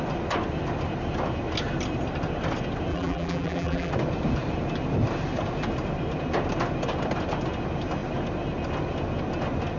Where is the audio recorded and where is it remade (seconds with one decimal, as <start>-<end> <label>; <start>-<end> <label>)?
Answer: 0.0-2.9 recorded; 2.9-3.9 remade; 3.9-9.8 recorded